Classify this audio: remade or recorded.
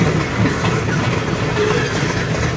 recorded